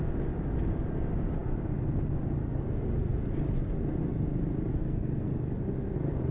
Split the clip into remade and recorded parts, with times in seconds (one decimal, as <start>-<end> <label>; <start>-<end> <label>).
0.0-4.7 recorded; 4.7-5.3 remade; 5.3-6.3 recorded